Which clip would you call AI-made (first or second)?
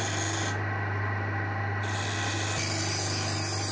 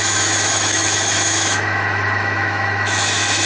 second